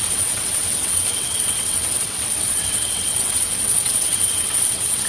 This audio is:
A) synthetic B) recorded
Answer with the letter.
A